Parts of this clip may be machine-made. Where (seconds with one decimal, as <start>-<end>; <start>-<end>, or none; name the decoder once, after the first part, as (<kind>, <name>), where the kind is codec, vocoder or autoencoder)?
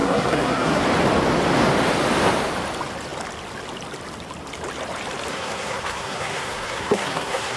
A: 0.0-0.8 (codec, SNAC); 5.3-7.6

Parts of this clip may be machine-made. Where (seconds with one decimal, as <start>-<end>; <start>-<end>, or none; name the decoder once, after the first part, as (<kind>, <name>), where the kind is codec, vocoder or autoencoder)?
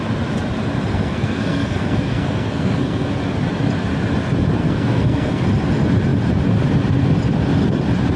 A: 0.9-3.1 (codec, SNAC); 4.6-5.4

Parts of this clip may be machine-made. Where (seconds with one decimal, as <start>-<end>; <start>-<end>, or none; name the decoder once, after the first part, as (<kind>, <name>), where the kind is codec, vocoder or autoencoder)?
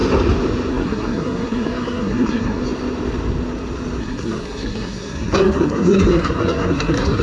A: 0.7-2.6 (codec, SNAC); 4.0-7.2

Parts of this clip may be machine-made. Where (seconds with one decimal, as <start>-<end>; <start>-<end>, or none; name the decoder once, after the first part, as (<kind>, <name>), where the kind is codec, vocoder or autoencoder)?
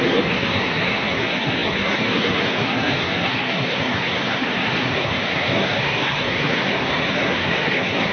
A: 0.0-8.1 (codec, SNAC)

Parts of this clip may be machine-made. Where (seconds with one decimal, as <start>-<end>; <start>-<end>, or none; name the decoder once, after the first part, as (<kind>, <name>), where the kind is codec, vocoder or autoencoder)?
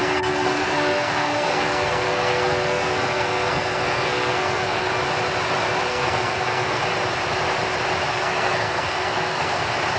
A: 0.0-4.9 (codec, SNAC); 5.9-6.8; 8.1-9.6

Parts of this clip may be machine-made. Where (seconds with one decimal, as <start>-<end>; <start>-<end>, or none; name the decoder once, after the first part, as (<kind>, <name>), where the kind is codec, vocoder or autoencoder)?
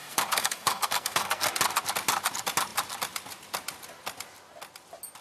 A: 0.0-1.5 (codec, SNAC)